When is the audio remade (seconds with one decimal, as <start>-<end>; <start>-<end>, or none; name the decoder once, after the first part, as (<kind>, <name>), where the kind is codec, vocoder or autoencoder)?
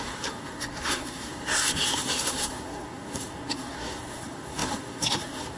0.0-5.6 (codec, SNAC)